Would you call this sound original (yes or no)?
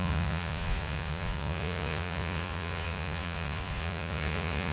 no